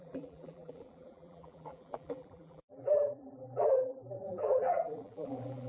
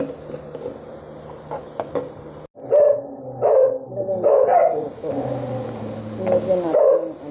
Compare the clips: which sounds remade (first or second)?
first